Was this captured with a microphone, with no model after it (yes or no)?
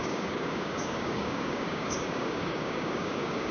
no